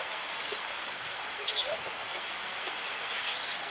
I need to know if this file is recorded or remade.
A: remade